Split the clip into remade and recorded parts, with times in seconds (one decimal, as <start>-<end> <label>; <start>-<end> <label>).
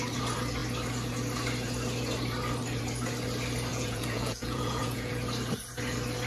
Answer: 0.0-3.7 recorded; 3.7-5.1 remade; 5.1-6.3 recorded